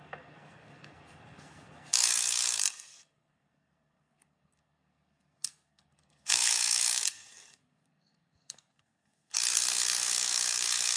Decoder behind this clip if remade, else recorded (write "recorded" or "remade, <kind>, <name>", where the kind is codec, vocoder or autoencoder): remade, codec, SNAC